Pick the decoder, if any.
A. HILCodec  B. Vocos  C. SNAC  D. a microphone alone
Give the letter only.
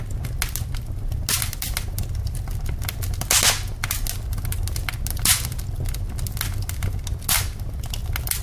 D